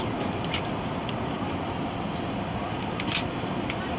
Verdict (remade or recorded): recorded